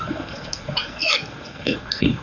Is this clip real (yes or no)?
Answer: no